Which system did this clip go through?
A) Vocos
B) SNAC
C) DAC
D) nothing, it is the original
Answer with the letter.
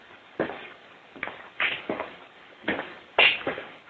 C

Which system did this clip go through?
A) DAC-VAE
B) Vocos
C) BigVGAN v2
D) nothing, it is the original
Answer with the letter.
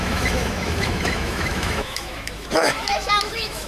A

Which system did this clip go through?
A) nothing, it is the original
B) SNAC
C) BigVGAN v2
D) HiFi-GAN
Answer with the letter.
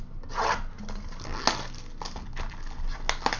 A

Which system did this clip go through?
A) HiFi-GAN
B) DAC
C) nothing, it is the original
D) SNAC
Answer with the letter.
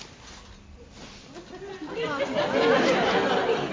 C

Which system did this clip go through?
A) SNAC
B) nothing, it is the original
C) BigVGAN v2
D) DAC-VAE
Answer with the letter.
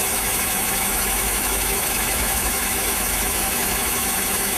D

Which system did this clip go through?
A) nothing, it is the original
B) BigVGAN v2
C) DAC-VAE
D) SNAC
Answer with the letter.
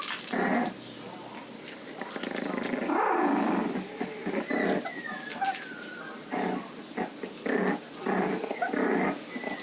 A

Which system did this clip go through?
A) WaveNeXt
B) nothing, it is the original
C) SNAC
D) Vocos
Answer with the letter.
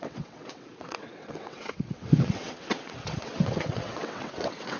A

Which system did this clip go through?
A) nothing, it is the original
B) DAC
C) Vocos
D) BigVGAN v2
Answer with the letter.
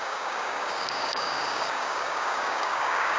B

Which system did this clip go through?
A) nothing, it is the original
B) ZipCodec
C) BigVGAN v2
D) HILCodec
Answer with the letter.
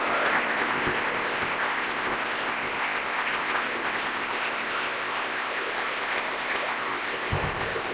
B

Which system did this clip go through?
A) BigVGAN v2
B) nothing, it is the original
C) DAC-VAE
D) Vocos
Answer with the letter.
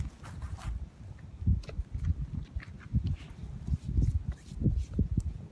B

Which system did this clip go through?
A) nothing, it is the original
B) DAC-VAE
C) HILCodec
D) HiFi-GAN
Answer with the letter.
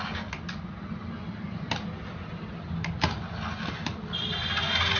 A